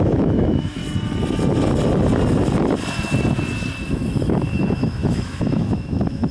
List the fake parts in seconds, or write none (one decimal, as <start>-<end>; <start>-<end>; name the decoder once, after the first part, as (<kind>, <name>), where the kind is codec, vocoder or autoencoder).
0.0-0.8 (autoencoder, DAC-VAE); 3.9-6.3